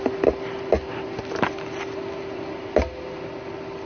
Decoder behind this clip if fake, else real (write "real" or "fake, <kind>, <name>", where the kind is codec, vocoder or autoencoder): real